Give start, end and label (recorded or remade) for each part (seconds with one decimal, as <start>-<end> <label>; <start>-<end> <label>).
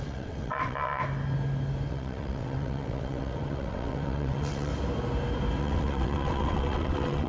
0.0-1.0 remade; 1.0-1.9 recorded; 1.9-4.7 remade; 4.7-5.6 recorded; 5.6-7.3 remade